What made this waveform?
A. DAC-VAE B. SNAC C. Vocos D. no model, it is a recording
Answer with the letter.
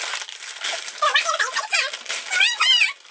D